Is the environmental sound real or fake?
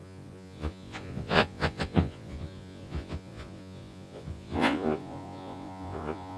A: fake